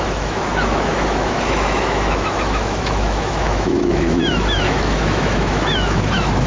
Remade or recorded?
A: remade